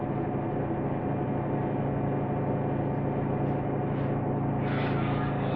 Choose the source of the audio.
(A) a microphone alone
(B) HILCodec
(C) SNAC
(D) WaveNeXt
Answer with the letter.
A